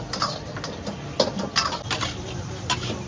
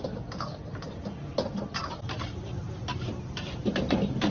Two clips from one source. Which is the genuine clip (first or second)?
first